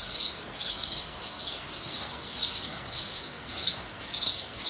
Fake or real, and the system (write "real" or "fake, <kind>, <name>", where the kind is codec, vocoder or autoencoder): fake, codec, SNAC